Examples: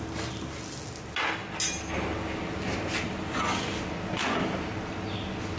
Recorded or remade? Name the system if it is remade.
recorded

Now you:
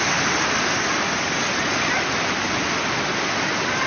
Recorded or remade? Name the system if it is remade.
recorded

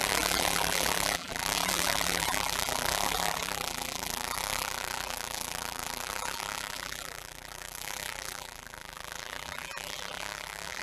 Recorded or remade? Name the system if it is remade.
remade, vocoder, BigVGAN v2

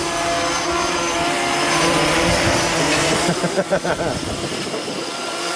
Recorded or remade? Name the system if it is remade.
recorded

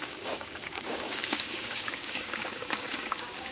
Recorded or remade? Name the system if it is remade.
remade, codec, DAC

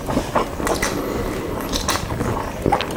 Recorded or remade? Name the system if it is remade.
recorded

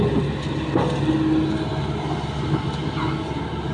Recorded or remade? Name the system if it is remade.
recorded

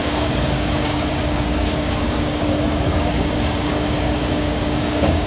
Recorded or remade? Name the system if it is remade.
remade, codec, DAC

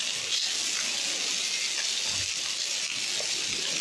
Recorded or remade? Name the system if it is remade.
recorded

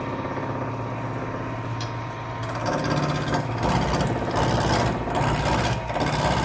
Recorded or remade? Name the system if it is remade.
recorded